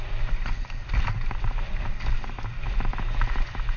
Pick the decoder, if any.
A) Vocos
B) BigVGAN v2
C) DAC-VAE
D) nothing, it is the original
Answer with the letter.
D